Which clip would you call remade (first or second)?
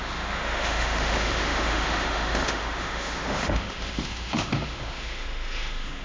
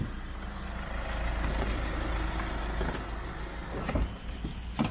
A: first